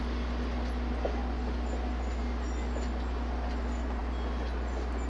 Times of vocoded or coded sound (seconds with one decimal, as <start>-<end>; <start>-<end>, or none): none